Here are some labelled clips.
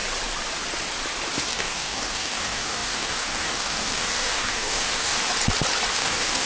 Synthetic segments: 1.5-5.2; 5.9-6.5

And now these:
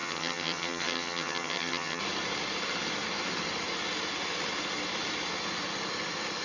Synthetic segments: 0.0-2.0

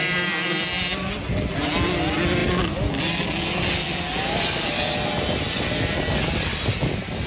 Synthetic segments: none